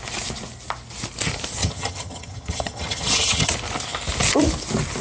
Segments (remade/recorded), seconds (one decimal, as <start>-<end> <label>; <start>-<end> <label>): 0.0-1.6 recorded; 1.6-3.5 remade; 3.5-5.0 recorded